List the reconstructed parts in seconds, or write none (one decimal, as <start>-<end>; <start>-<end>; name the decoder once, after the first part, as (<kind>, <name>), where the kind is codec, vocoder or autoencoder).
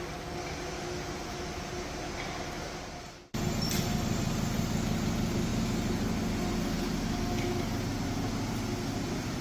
none